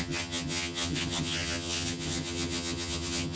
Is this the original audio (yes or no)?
no